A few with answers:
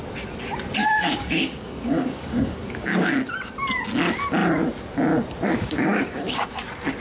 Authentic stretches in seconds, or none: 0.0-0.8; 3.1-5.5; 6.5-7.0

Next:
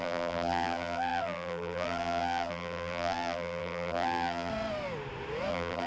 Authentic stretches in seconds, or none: 4.5-5.5

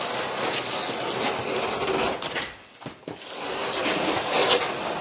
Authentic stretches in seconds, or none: 0.0-3.8; 4.6-5.0